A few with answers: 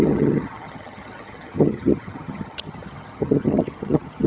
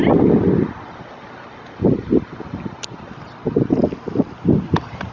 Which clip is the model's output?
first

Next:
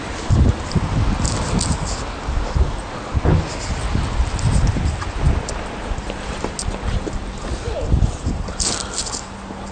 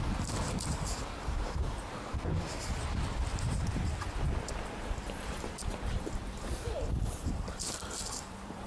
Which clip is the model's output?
second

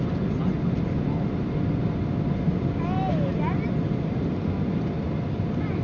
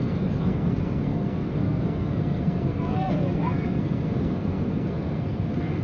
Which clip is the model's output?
second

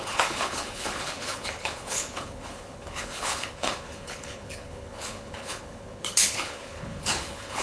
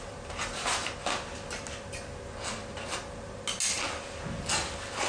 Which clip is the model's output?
first